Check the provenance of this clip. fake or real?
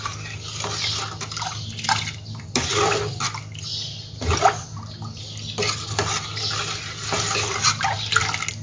real